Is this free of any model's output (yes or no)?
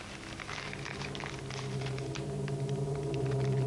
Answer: yes